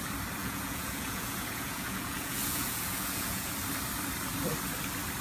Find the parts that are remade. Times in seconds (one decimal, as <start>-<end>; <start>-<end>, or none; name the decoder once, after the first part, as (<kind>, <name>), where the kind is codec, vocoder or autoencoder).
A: 0.4-3.5 (vocoder, Vocos)